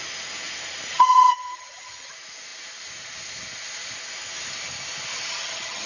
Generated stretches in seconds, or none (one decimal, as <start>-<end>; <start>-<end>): 0.9-2.1; 5.1-5.9